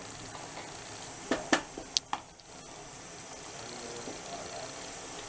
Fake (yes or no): no